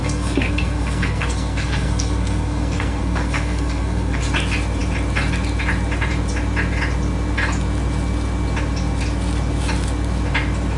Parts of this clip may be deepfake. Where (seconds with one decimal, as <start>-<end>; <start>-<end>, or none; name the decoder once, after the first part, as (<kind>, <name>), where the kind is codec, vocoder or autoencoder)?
0.0-4.2 (codec, SNAC)